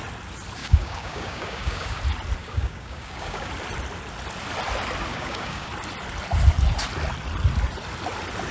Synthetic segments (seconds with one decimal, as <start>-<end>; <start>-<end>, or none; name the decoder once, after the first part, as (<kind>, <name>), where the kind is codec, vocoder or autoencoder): 0.6-2.0 (codec, DAC); 2.4-3.5; 5.1-5.7